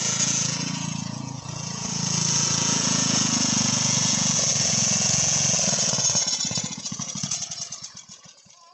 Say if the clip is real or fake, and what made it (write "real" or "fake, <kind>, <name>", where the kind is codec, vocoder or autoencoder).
fake, vocoder, Vocos